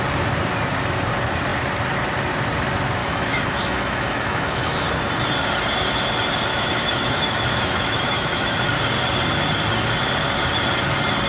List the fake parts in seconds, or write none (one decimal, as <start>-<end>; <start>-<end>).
3.0-4.9; 6.5-8.7